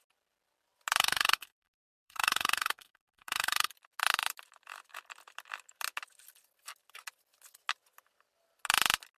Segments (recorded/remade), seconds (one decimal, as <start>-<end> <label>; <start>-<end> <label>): 0.0-1.0 recorded; 1.0-3.7 remade; 3.7-9.2 recorded